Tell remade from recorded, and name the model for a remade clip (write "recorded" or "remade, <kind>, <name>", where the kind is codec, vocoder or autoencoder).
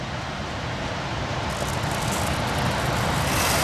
recorded